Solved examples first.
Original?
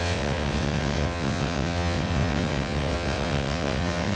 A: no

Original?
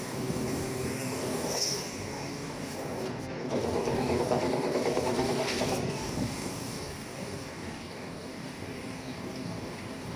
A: no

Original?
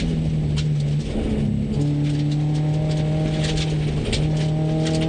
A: yes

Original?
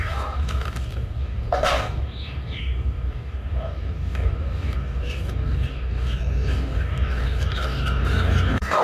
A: no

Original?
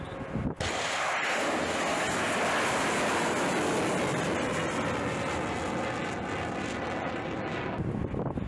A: yes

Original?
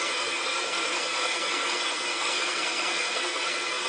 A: no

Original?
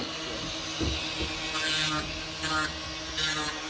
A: yes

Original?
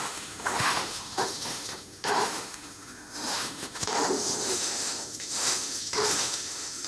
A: no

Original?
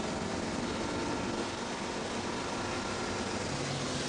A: yes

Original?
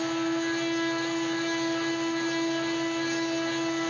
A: yes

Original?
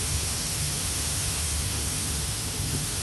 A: no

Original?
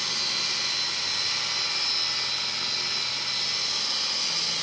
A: yes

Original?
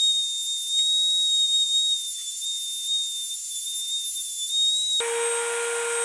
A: yes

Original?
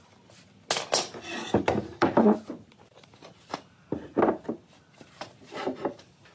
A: yes